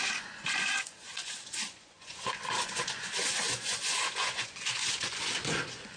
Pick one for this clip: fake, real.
fake